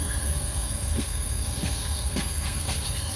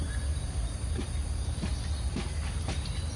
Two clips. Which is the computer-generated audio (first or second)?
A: first